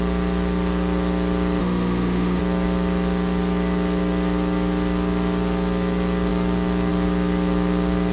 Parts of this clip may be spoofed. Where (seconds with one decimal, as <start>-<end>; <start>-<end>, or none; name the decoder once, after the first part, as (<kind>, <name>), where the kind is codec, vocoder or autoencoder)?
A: 1.6-2.4 (autoencoder, DAC-VAE)